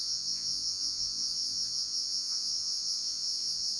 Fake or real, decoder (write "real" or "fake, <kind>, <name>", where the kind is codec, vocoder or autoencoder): fake, vocoder, Vocos